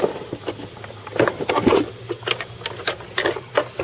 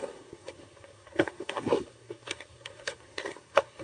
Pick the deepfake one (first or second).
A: second